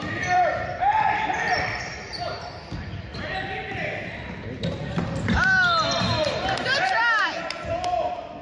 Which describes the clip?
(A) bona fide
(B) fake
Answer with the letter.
B